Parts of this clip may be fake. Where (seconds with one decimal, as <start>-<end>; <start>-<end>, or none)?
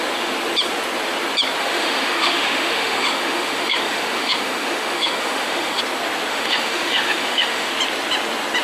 1.6-5.8; 6.3-7.7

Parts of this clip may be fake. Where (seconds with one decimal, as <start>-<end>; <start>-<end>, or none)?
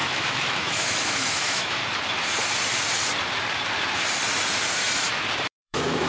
0.0-1.8; 5.5-6.1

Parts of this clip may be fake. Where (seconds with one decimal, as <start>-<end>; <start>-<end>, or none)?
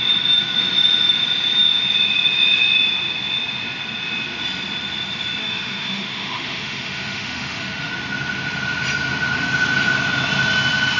5.4-7.9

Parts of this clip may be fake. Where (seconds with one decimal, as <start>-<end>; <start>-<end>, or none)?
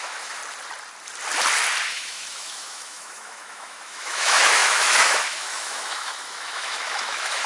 0.0-0.4; 1.9-7.5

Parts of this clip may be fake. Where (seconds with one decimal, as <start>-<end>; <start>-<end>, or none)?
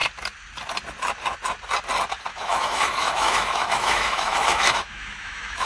2.3-5.7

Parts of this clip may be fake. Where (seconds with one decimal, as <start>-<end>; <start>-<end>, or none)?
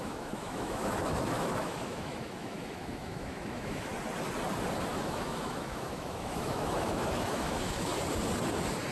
0.0-3.9; 4.9-7.9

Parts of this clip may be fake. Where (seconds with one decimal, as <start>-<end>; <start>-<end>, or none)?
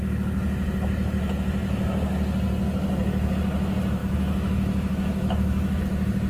4.0-5.8